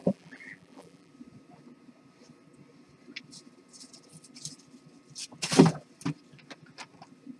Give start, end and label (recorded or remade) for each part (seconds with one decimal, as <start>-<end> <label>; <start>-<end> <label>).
0.0-1.1 remade; 1.1-7.4 recorded